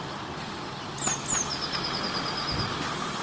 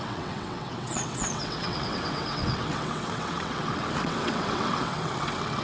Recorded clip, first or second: first